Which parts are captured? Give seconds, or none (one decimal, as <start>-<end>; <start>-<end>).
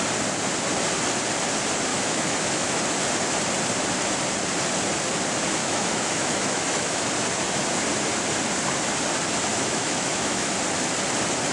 0.0-1.9; 2.8-5.6; 7.1-9.5; 10.5-11.5